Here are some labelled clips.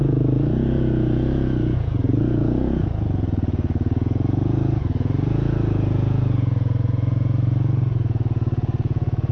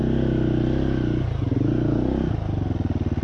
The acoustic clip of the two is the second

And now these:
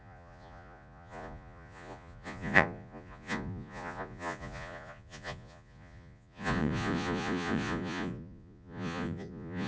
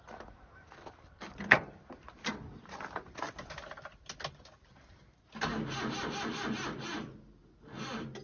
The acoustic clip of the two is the second